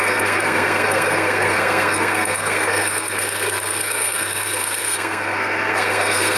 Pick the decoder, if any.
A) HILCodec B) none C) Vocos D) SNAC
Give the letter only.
D